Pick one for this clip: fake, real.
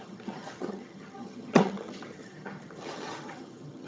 fake